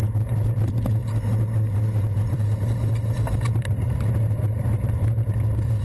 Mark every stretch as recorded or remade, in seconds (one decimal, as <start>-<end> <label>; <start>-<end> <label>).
0.0-1.0 remade; 1.0-2.2 recorded; 2.2-5.8 remade